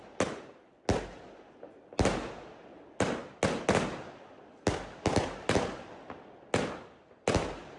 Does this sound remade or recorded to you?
recorded